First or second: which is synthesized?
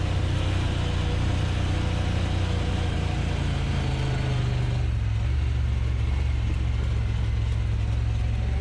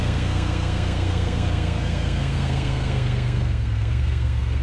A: second